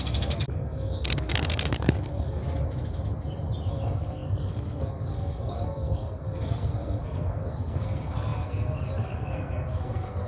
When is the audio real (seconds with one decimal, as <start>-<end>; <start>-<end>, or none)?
2.4-3.7